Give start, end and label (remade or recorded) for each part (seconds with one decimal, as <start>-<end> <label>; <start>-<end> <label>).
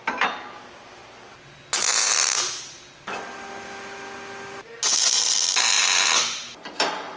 0.0-7.2 recorded